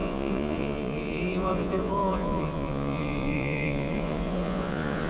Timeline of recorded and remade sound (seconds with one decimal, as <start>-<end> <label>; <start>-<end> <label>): 0.0-5.1 remade